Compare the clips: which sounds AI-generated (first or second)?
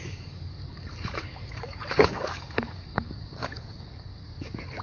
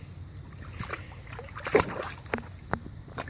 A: first